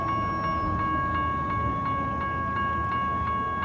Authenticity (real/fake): real